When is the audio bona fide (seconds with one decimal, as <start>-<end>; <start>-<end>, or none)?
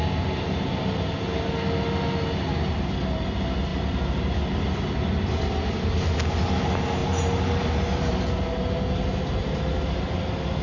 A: 0.0-10.6